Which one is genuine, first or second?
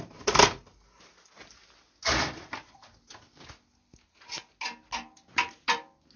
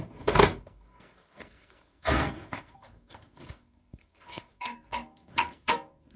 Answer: first